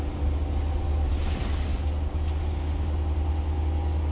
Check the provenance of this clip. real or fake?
real